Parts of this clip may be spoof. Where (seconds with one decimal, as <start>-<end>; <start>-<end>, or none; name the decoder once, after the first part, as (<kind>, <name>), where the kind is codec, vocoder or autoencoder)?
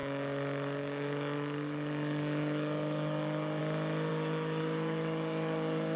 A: 0.0-3.6 (codec, DAC); 4.1-6.0